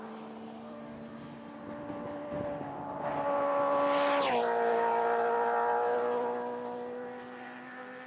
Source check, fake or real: real